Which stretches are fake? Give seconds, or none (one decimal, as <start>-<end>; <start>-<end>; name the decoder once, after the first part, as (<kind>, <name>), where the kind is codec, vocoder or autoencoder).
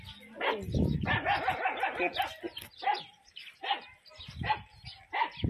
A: none